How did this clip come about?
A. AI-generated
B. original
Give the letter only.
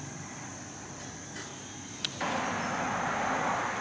B